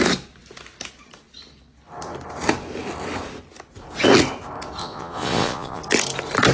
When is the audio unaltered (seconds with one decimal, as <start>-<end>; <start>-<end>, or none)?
0.0-4.8; 5.8-6.5